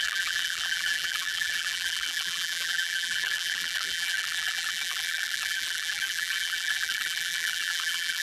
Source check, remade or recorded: remade